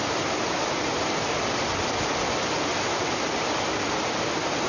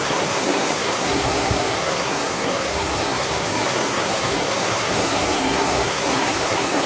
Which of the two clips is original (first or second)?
first